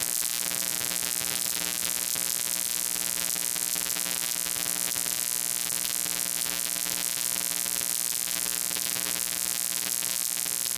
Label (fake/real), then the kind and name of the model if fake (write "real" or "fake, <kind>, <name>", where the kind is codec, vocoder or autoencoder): real